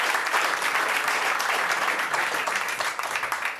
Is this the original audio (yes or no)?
no